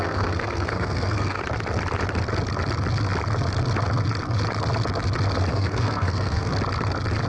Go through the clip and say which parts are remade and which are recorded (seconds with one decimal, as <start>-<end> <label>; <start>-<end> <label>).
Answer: 0.0-1.4 remade; 1.4-5.5 recorded; 5.5-6.5 remade; 6.5-7.3 recorded